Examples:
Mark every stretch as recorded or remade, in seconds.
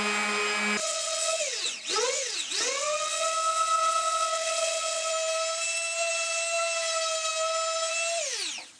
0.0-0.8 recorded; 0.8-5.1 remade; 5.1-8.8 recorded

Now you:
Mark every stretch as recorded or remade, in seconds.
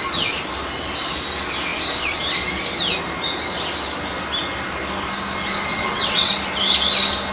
0.0-5.7 recorded; 5.7-6.3 remade; 6.3-7.3 recorded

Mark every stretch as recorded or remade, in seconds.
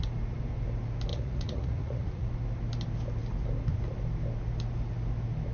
0.0-1.1 recorded; 1.1-2.3 remade; 2.3-5.5 recorded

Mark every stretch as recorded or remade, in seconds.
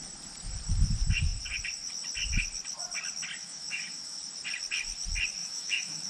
0.0-3.4 recorded; 3.4-4.2 remade; 4.2-5.4 recorded; 5.4-6.1 remade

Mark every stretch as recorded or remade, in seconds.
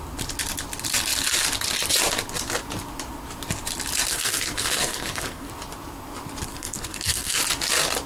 0.0-4.1 recorded; 4.1-5.5 remade; 5.5-6.5 recorded; 6.5-7.4 remade; 7.4-8.1 recorded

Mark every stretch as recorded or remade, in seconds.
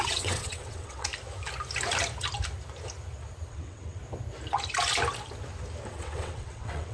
0.0-1.1 remade; 1.1-3.5 recorded; 3.5-4.0 remade; 4.0-5.9 recorded; 5.9-6.9 remade